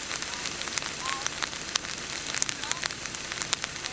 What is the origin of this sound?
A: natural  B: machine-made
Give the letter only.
A